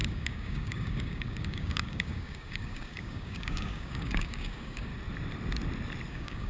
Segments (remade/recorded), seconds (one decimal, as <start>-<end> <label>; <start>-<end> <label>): 0.0-4.9 remade; 4.9-6.1 recorded; 6.1-6.5 remade